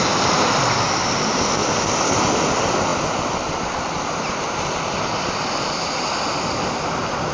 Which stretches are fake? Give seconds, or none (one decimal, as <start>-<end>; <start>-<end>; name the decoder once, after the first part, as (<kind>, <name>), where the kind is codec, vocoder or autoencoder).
2.9-6.0 (vocoder, BigVGAN v2)